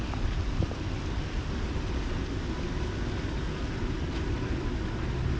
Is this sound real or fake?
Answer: real